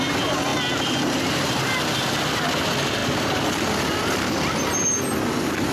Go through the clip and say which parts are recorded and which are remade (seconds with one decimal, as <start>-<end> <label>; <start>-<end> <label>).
0.0-5.7 recorded